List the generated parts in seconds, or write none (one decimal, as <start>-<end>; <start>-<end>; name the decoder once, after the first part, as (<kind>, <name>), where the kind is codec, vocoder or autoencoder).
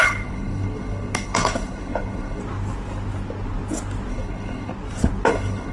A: 0.0-2.4 (codec, HILCodec); 4.1-4.7; 5.3-5.7